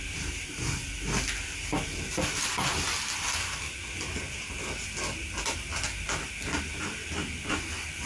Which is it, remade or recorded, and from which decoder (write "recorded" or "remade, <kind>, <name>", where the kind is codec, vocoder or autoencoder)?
recorded